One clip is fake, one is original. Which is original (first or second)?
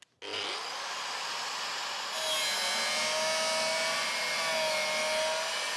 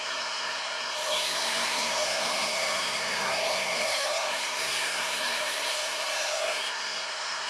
first